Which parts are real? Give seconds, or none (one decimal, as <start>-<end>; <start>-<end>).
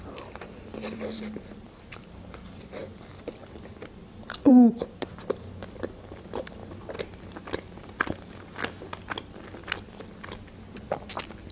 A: 2.8-3.4; 6.6-11.5